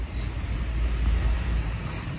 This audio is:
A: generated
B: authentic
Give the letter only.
B